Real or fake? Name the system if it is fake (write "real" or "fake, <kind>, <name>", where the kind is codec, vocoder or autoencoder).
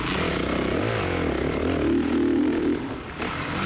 real